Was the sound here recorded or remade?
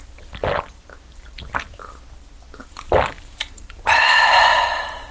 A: recorded